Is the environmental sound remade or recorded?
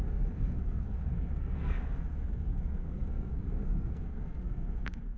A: remade